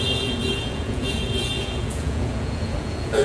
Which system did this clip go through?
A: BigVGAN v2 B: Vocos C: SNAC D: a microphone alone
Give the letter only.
B